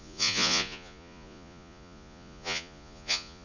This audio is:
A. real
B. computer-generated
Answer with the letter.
B